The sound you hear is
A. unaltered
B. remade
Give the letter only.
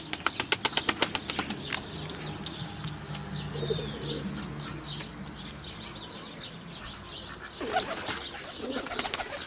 A